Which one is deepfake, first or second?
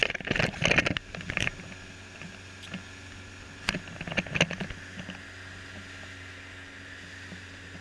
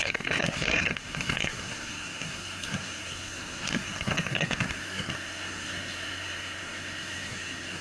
second